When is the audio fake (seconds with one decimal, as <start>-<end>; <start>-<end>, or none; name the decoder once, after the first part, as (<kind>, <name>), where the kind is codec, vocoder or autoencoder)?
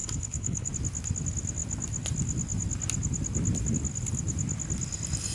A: 0.0-0.7 (codec, HILCodec)